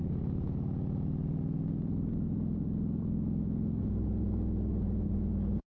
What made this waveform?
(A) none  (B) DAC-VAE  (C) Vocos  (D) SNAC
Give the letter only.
C